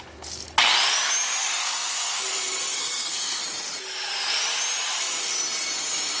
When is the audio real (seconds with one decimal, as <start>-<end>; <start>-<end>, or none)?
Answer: 0.0-1.4; 2.2-2.7; 3.4-6.2